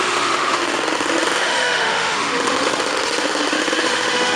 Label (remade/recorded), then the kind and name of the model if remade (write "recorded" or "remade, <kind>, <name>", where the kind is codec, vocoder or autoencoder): remade, autoencoder, DAC-VAE